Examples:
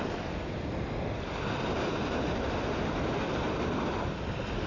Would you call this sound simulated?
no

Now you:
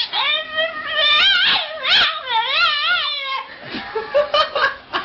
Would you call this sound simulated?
no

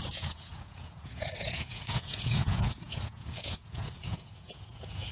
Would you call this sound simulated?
yes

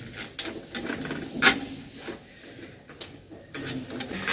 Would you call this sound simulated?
no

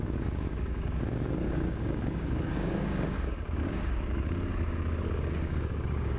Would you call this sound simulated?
yes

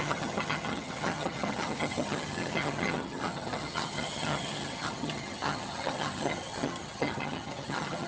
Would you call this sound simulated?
yes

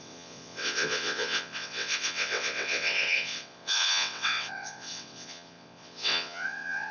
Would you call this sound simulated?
yes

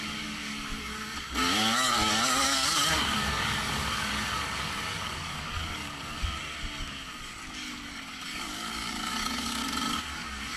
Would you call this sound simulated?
yes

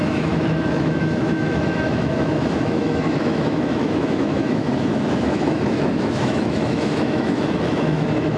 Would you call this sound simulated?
yes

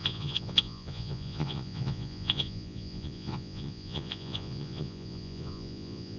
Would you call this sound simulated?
yes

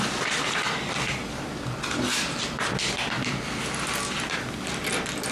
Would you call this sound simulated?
no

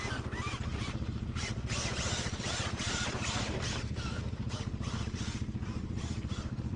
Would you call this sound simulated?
yes